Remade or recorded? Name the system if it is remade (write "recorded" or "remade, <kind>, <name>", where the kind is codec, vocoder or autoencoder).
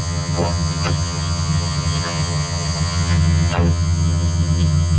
remade, vocoder, HiFi-GAN